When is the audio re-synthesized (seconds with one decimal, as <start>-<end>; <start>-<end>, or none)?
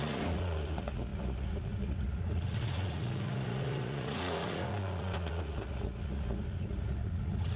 0.0-7.6